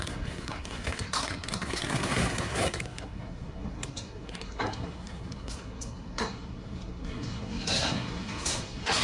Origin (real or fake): fake